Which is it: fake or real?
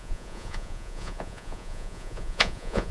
fake